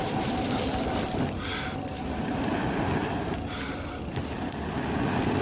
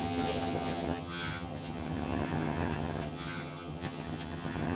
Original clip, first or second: first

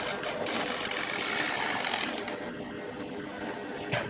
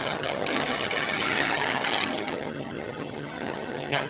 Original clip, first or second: first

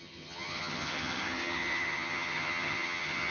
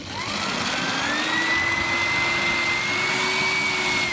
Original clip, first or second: second